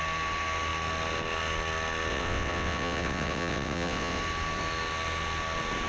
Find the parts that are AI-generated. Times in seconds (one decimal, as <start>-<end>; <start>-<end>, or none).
2.1-4.2